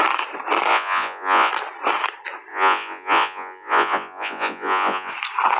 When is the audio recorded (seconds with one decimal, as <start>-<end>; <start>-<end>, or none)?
0.0-0.7; 1.5-2.5; 5.1-5.6